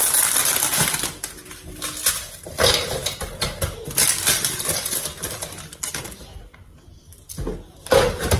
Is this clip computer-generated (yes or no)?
no